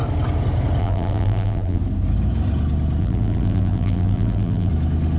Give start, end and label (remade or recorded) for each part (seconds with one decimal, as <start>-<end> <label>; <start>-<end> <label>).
0.0-0.8 recorded; 0.8-1.8 remade; 1.8-3.0 recorded; 3.0-4.7 remade; 4.7-5.2 recorded